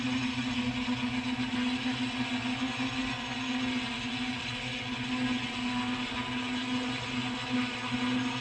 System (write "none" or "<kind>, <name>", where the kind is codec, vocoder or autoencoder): none